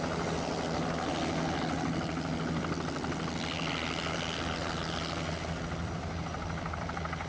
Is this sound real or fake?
real